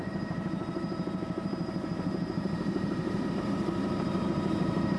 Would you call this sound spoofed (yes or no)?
yes